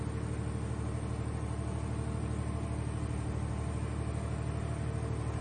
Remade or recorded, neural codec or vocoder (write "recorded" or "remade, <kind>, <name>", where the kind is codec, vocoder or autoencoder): recorded